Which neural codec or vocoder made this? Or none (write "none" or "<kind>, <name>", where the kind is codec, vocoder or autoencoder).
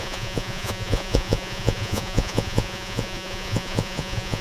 vocoder, Vocos